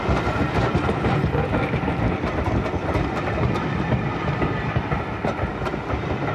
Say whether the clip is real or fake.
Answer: real